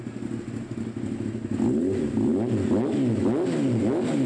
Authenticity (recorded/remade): recorded